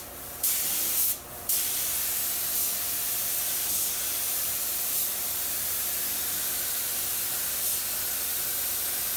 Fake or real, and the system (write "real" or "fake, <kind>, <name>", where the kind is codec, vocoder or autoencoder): real